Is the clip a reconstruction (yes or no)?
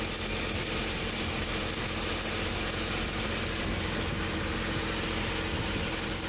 no